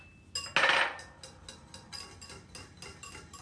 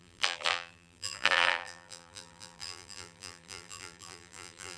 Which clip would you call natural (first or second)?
first